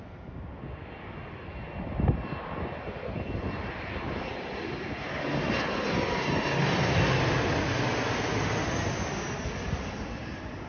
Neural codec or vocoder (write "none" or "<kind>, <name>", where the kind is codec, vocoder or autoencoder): none